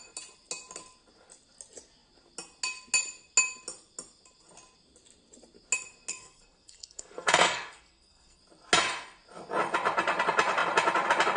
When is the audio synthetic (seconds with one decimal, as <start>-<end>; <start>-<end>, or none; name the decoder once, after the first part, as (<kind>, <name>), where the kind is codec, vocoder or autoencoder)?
6.1-8.4 (codec, SNAC)